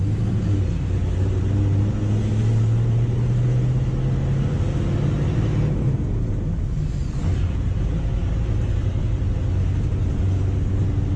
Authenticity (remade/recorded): recorded